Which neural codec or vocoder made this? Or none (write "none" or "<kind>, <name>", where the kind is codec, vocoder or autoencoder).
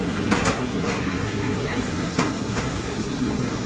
codec, SNAC